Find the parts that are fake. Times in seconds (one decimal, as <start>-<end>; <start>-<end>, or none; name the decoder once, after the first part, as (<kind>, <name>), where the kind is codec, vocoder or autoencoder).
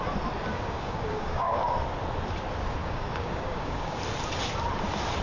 0.5-1.6 (codec, DAC); 2.8-4.0